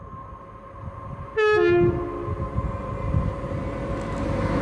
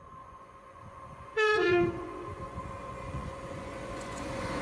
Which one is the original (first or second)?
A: first